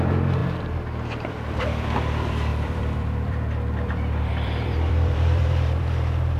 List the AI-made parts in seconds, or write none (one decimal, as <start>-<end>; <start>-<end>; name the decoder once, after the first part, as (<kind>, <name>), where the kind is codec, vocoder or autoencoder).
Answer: 0.0-6.4 (vocoder, BigVGAN v2)